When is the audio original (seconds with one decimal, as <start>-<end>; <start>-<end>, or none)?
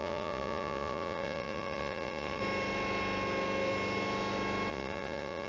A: 2.4-4.7